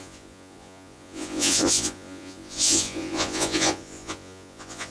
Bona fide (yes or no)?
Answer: no